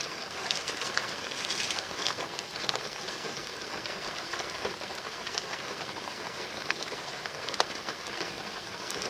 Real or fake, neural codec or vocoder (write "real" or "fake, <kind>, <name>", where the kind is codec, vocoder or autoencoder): fake, codec, SNAC